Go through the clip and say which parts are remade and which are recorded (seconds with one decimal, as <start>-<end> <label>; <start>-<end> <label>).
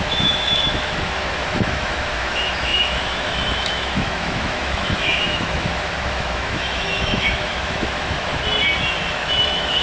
0.0-8.3 remade; 8.3-9.1 recorded; 9.1-9.8 remade